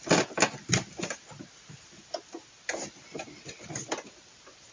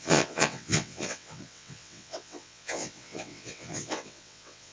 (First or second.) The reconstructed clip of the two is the second